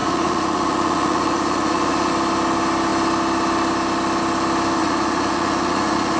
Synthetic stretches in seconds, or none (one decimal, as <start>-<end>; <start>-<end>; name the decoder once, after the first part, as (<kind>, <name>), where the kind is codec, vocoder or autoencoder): 0.0-2.1 (vocoder, Vocos); 4.8-6.2